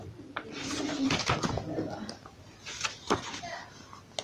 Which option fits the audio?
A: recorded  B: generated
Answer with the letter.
A